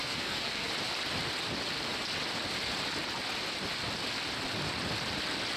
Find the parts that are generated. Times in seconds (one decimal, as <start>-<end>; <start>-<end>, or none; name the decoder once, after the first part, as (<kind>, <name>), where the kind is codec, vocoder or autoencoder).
0.0-0.7 (codec, SNAC)

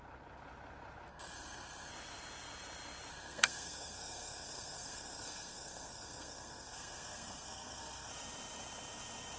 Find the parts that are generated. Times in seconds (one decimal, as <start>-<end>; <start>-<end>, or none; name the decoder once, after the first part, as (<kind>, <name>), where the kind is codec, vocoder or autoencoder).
1.1-1.9 (codec, SNAC); 3.1-8.1

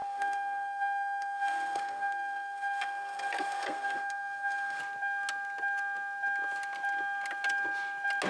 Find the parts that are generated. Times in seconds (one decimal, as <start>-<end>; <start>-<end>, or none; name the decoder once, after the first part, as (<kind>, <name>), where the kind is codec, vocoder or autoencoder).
0.0-4.8 (codec, SNAC)

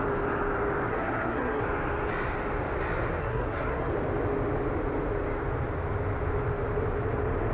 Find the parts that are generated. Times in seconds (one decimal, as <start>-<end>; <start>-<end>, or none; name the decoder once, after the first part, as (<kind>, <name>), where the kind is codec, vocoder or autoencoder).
0.9-1.6 (codec, SNAC); 3.2-3.9